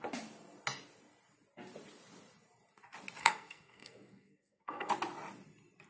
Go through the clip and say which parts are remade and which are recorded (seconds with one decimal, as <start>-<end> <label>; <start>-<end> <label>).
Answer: 0.0-3.2 recorded; 3.2-4.9 remade; 4.9-5.9 recorded